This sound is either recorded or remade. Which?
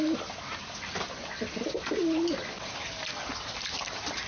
recorded